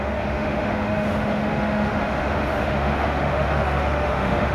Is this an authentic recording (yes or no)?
no